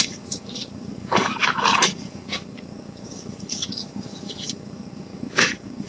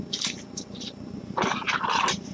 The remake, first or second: first